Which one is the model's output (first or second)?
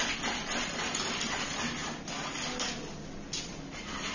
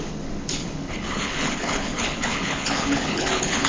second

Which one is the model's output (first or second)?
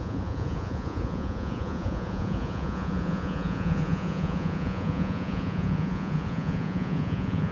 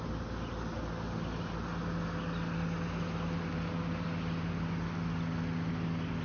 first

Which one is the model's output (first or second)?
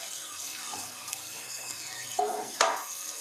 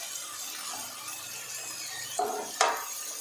first